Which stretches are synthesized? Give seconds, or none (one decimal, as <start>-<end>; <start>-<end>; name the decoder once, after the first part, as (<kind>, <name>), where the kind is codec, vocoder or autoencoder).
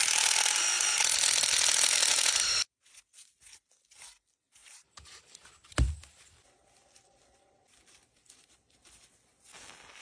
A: 2.1-2.9 (vocoder, BigVGAN v2)